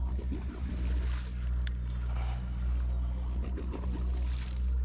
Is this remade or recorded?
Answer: recorded